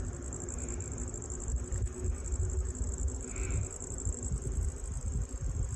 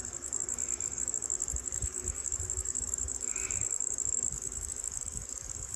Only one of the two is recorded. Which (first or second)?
first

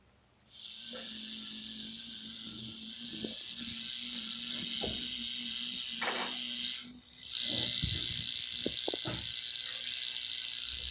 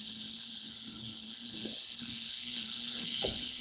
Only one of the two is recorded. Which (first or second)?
first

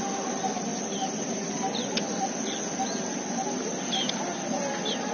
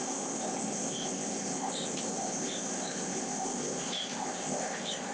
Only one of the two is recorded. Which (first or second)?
first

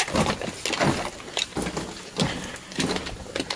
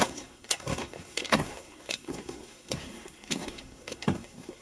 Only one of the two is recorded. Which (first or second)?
first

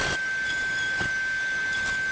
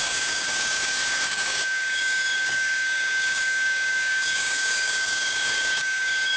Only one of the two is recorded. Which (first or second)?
first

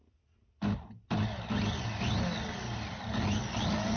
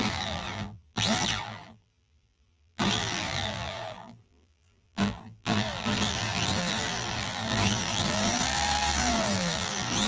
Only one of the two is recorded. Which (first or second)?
first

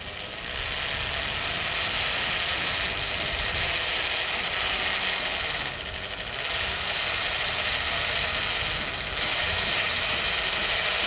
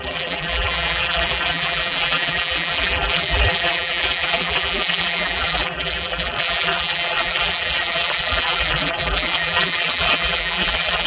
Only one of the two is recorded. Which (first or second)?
first